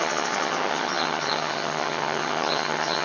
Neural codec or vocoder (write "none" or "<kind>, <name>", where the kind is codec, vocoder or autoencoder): vocoder, HiFi-GAN